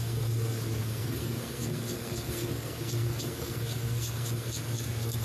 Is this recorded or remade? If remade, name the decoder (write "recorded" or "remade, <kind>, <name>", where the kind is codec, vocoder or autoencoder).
remade, codec, SNAC